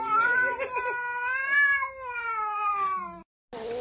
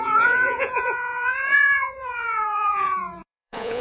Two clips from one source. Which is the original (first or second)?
first